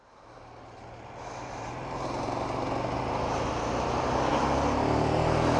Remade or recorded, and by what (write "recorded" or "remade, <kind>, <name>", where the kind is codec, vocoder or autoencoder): recorded